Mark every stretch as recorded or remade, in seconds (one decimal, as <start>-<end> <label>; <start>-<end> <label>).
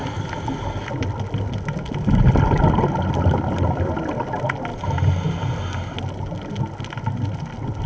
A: 0.0-7.9 recorded